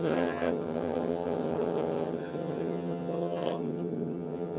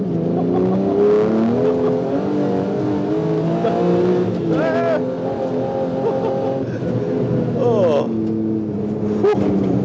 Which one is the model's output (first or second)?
first